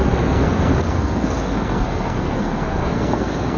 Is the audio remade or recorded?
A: remade